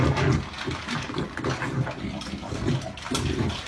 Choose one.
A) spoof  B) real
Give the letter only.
B